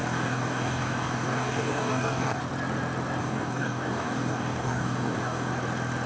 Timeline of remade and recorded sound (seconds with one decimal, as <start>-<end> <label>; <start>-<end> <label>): 0.0-2.4 remade; 2.4-3.2 recorded; 3.2-5.5 remade; 5.5-6.1 recorded